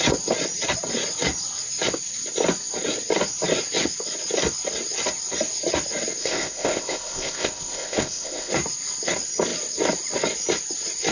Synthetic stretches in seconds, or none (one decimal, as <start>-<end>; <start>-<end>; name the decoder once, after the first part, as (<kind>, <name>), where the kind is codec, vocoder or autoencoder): 6.2-8.5 (codec, ZipCodec)